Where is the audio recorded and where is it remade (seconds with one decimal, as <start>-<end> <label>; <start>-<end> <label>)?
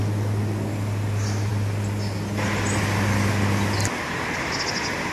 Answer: 0.0-1.5 recorded; 1.5-4.6 remade; 4.6-5.1 recorded